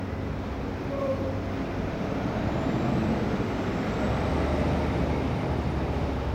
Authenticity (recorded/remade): recorded